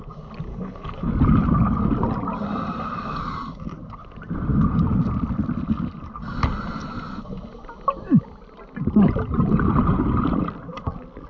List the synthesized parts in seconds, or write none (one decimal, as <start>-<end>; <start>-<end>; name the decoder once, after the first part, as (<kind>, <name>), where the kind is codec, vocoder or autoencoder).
0.5-1.1 (codec, HILCodec)